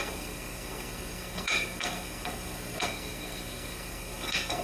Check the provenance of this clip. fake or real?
fake